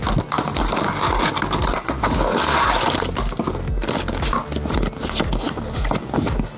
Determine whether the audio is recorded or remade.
recorded